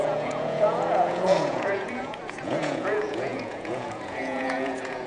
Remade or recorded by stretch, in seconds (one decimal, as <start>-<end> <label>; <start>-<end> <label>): 0.0-5.1 remade